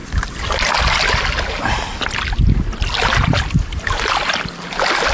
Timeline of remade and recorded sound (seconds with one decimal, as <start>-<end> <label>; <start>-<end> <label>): 0.0-5.1 recorded